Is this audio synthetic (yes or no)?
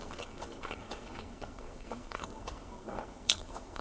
yes